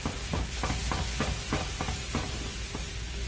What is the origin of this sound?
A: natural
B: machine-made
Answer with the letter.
A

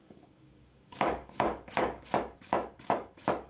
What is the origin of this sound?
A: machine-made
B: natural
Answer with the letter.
A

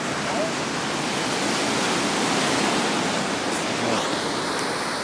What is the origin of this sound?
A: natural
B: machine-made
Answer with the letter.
A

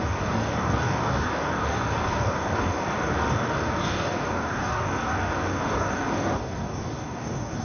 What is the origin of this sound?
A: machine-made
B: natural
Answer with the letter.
A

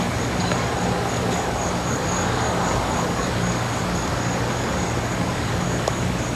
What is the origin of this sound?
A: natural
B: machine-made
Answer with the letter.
B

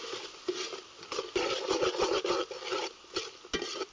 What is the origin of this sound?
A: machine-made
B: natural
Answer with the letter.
B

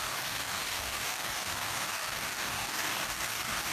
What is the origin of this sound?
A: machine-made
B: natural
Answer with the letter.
A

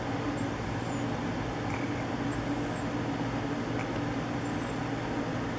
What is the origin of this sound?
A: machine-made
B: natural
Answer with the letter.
B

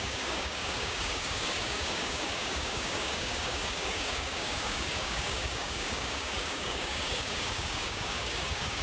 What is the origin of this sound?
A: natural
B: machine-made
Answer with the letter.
B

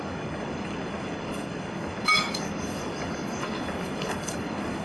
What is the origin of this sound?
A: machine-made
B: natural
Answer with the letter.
A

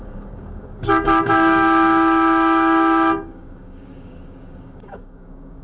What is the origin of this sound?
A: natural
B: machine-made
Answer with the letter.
B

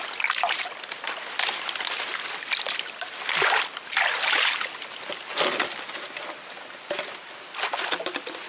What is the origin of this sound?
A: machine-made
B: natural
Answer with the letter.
B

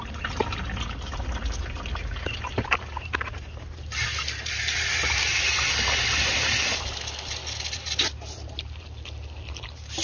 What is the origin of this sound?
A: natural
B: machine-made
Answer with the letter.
A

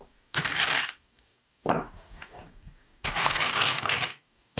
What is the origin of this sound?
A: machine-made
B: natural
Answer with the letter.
A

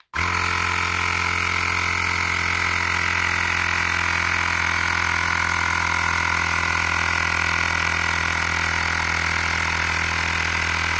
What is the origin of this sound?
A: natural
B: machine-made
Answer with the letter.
A